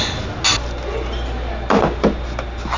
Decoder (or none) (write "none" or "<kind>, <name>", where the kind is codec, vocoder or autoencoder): none